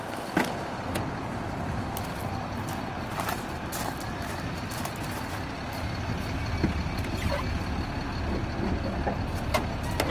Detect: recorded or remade recorded